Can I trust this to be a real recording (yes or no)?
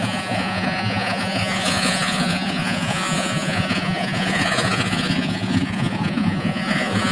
no